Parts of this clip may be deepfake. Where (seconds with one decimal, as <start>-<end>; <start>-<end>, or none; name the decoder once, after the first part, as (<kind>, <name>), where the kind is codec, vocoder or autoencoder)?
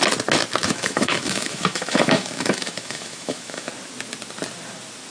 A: 0.6-3.7 (autoencoder, DAC-VAE)